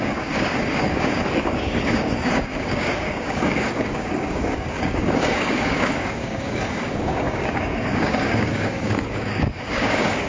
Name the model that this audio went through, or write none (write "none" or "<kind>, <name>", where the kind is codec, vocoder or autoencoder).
codec, DAC